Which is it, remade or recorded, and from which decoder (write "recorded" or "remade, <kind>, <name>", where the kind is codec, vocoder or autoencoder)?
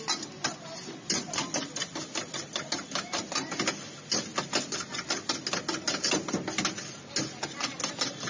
recorded